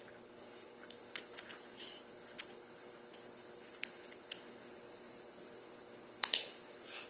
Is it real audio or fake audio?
fake